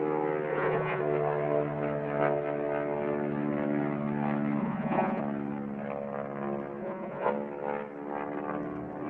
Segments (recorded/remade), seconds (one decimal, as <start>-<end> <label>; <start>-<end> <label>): 0.0-0.5 recorded; 0.5-1.0 remade; 1.0-4.6 recorded; 4.6-5.2 remade; 5.2-6.8 recorded; 6.8-7.3 remade; 7.3-9.1 recorded